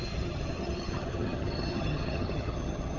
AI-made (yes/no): yes